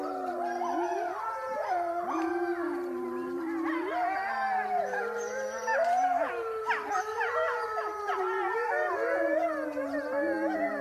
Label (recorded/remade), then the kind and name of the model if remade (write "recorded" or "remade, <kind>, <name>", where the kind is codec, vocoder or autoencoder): remade, vocoder, BigVGAN v2